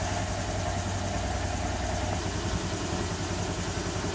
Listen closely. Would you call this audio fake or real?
real